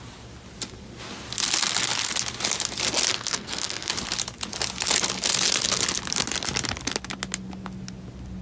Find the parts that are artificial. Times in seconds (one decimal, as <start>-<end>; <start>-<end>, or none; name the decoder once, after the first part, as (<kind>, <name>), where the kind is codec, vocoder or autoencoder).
3.1-3.9 (codec, SNAC)